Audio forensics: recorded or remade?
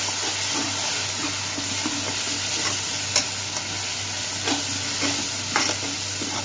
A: recorded